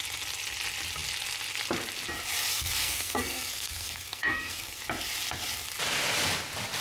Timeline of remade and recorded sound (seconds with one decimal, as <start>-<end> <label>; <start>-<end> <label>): 0.0-2.5 recorded; 2.5-4.8 remade; 4.8-6.8 recorded